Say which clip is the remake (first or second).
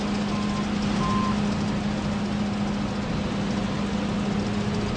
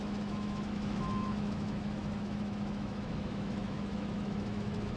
second